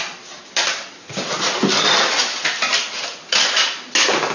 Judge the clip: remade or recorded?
recorded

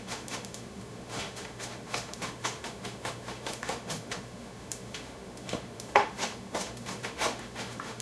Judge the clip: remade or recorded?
remade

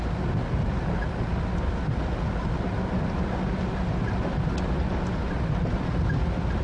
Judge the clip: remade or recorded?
recorded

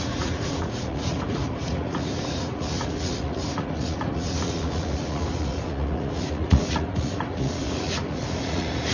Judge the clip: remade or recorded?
remade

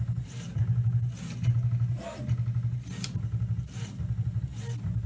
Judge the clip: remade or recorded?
recorded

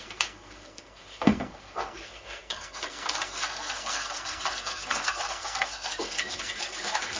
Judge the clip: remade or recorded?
remade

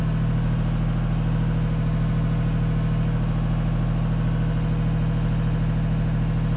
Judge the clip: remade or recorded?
recorded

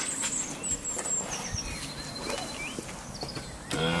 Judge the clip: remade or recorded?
recorded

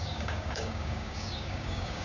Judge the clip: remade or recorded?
remade